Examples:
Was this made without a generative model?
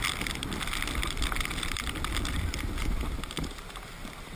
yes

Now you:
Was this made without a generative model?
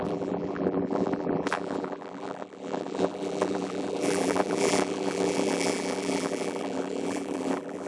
no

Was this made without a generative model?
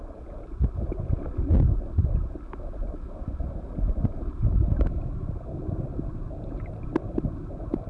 yes